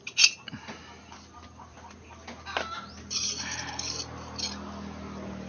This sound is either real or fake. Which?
real